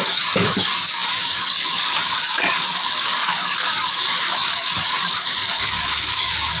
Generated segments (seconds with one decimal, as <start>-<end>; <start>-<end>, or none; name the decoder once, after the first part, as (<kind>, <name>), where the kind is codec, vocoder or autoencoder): 0.0-6.6 (codec, DAC)